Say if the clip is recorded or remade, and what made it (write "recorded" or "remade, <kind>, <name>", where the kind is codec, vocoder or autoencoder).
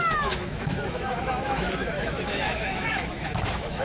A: remade, autoencoder, DAC-VAE